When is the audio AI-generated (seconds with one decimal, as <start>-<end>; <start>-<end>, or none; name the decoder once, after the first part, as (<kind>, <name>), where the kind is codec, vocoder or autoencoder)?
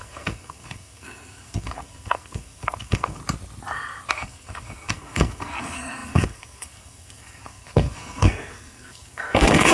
0.0-3.2 (codec, SNAC); 4.1-9.7